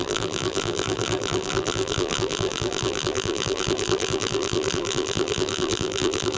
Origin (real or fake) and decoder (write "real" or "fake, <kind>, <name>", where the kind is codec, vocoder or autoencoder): fake, vocoder, BigVGAN v2